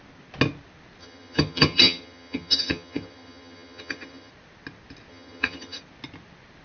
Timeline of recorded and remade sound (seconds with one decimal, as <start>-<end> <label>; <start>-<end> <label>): 0.0-1.0 recorded; 1.0-4.3 remade; 4.3-5.1 recorded; 5.1-5.8 remade; 5.8-6.6 recorded